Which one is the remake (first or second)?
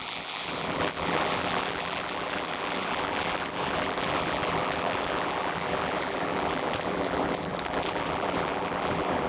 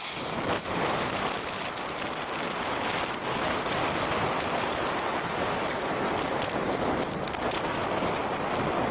first